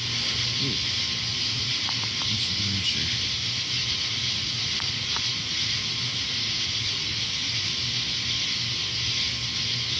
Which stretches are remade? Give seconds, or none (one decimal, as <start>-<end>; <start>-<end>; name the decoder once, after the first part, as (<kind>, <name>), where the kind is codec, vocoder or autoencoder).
1.3-2.1 (vocoder, Vocos); 3.8-7.8